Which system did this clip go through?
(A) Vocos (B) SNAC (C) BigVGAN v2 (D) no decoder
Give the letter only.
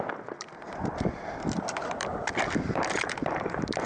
C